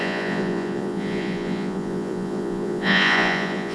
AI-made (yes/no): yes